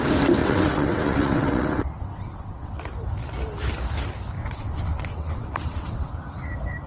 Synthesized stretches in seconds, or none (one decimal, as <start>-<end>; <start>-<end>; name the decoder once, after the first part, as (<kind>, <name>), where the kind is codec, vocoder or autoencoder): 0.4-2.8 (vocoder, WaveNeXt); 4.4-6.1